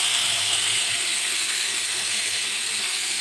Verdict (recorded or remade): remade